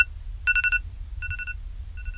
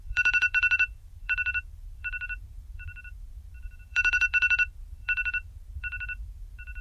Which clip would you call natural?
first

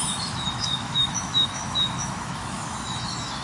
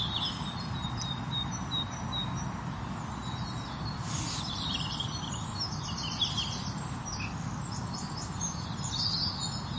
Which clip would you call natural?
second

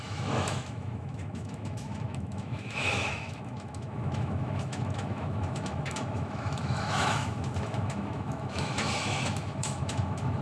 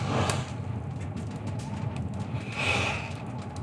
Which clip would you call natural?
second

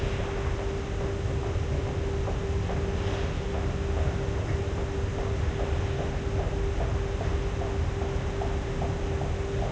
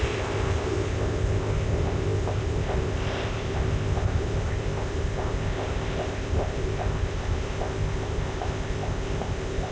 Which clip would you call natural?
first